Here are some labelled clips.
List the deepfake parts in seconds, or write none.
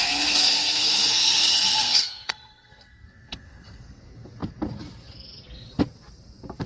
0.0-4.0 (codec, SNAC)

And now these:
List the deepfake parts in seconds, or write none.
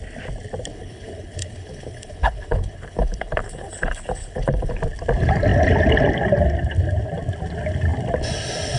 0.7-4.8 (codec, HILCodec)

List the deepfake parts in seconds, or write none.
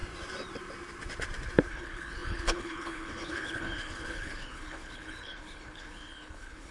1.7-6.7 (codec, HILCodec)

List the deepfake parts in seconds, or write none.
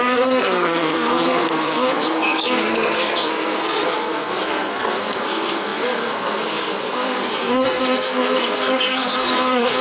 0.0-9.8 (codec, SNAC)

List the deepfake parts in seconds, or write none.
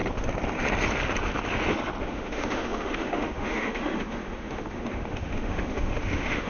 2.0-6.5 (autoencoder, DAC-VAE)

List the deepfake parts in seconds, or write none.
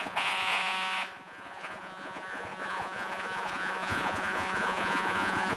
0.0-5.6 (vocoder, Vocos)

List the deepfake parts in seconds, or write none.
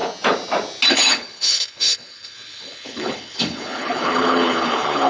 0.9-5.1 (codec, HILCodec)